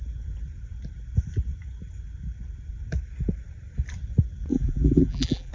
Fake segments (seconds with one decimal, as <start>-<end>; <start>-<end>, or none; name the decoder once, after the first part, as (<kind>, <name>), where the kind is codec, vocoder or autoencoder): 4.5-5.5 (vocoder, BigVGAN v2)